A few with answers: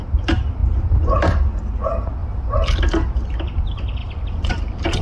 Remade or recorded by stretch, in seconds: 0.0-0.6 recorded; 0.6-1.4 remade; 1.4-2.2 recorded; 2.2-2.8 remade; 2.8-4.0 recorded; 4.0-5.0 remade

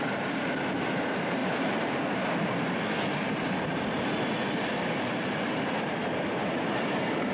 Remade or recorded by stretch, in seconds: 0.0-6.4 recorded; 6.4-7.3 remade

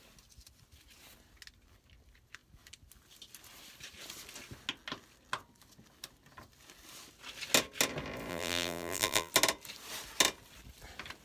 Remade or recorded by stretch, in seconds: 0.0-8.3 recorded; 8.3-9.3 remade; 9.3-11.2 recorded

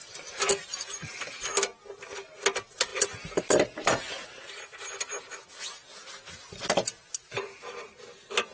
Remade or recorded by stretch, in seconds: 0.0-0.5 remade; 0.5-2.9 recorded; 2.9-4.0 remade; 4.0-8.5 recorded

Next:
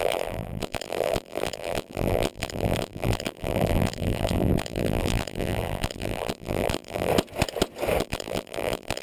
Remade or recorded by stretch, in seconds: 0.0-7.1 remade; 7.1-8.0 recorded; 8.0-9.0 remade

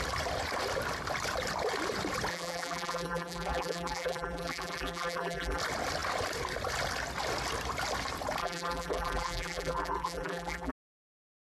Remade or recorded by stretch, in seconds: 0.0-2.3 recorded; 2.3-5.6 remade; 5.6-8.4 recorded; 8.4-10.7 remade; 10.7-11.5 recorded

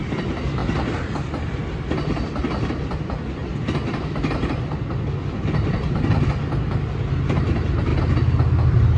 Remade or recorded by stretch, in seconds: 0.0-3.4 recorded; 3.4-5.0 remade; 5.0-9.0 recorded

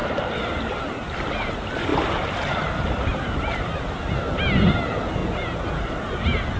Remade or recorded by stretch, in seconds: 0.0-1.5 remade; 1.5-1.9 recorded; 1.9-3.9 remade; 3.9-6.6 recorded